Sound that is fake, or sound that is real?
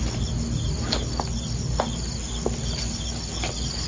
real